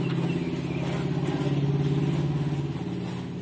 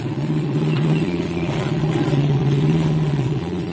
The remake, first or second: second